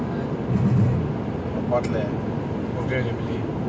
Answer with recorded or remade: recorded